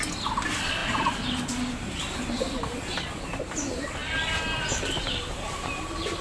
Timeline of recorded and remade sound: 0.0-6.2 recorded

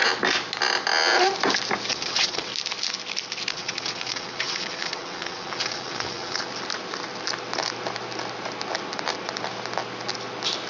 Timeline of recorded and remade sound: 0.0-1.9 recorded; 1.9-2.5 remade; 2.5-3.5 recorded; 3.5-6.5 remade; 6.5-10.7 recorded

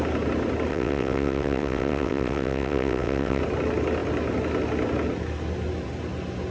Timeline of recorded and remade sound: 0.0-0.7 recorded; 0.7-3.4 remade; 3.4-6.5 recorded

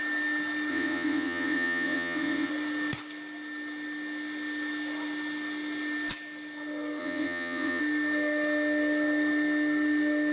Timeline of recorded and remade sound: 0.0-0.7 recorded; 0.7-2.5 remade; 2.5-7.0 recorded; 7.0-7.8 remade; 7.8-10.3 recorded

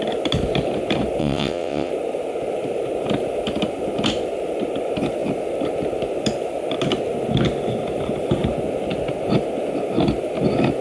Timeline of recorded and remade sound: 0.0-1.2 recorded; 1.2-1.9 remade; 1.9-10.8 recorded